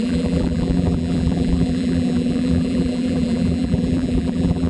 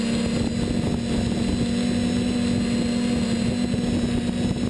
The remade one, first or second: first